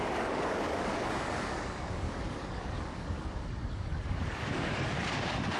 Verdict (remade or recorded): remade